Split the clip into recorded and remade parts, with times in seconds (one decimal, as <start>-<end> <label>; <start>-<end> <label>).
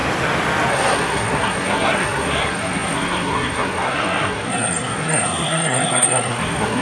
0.0-0.7 recorded; 0.7-6.8 remade